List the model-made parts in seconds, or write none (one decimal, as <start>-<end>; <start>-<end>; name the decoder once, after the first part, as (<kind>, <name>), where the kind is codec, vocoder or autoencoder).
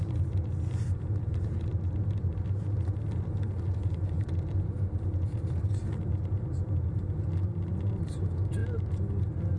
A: none